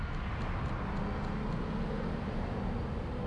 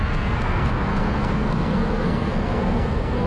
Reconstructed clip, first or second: second